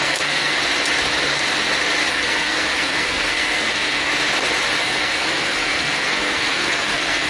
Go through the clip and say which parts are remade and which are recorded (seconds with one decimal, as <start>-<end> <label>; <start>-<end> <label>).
0.0-0.6 remade; 0.6-2.1 recorded; 2.1-4.1 remade; 4.1-4.8 recorded; 4.8-7.3 remade